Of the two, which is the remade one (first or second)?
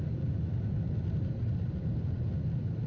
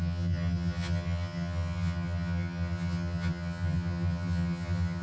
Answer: second